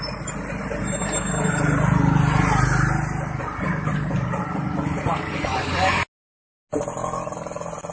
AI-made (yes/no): no